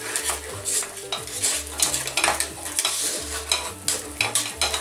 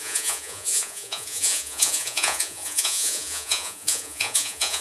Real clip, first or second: first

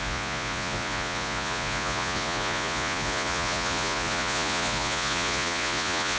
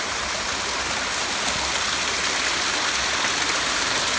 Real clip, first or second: second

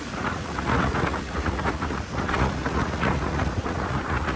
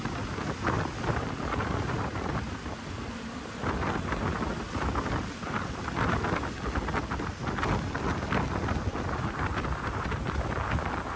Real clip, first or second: second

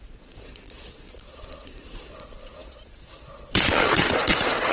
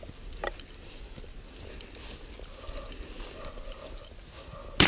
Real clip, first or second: second